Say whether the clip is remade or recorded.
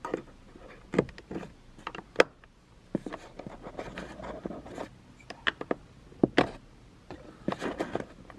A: recorded